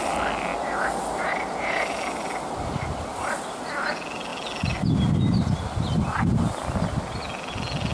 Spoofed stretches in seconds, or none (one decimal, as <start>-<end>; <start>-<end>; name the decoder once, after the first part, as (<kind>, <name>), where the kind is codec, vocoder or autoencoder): none